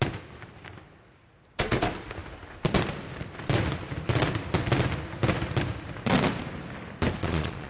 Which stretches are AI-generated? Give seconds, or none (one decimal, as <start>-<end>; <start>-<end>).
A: 7.2-7.7